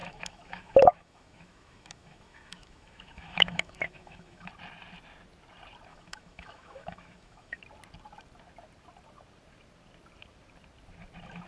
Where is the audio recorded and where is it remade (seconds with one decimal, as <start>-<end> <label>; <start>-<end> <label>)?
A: 0.0-4.5 remade; 4.5-5.9 recorded; 5.9-7.6 remade; 7.6-11.5 recorded

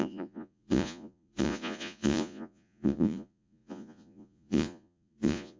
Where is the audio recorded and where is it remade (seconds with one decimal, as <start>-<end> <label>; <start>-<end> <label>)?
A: 0.0-5.6 remade

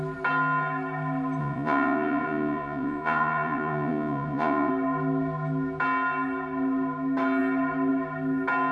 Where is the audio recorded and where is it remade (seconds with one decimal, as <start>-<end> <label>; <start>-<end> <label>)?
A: 0.0-1.4 recorded; 1.4-4.7 remade; 4.7-8.7 recorded

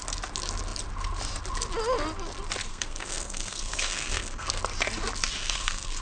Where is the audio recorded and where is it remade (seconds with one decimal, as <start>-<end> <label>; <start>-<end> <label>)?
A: 0.0-2.7 recorded; 2.7-4.6 remade; 4.6-5.4 recorded; 5.4-6.0 remade